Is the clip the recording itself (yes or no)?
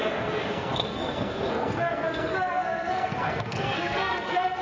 no